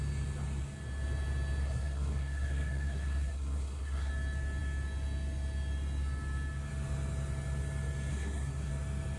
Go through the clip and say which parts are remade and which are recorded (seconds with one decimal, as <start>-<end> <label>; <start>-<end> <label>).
0.0-1.6 recorded; 1.6-4.1 remade; 4.1-8.1 recorded; 8.1-8.7 remade; 8.7-9.2 recorded